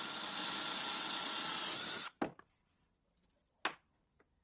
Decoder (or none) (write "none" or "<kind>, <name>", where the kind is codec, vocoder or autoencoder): none